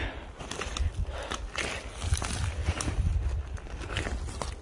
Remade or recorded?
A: recorded